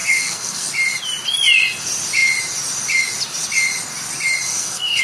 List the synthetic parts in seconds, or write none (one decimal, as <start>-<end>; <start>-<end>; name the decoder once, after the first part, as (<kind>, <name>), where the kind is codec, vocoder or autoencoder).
0.0-0.7 (codec, SNAC); 4.5-5.0